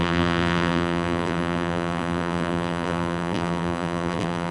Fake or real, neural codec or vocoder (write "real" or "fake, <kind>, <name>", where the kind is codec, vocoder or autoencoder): fake, vocoder, BigVGAN v2